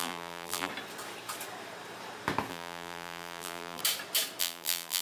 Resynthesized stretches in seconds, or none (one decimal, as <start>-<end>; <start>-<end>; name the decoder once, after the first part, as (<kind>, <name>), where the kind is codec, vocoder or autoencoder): 0.0-0.7 (vocoder, BigVGAN v2); 2.5-3.8; 4.4-5.0